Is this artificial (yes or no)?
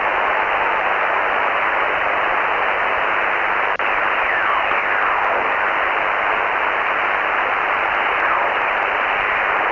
no